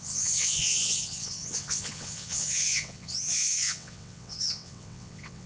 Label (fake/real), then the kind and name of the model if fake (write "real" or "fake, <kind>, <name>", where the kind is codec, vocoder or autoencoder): fake, vocoder, WaveNeXt